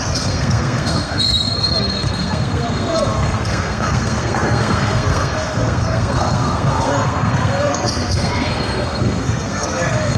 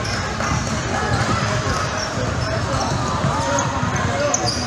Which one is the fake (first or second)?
first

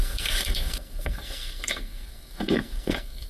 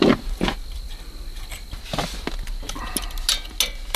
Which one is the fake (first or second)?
first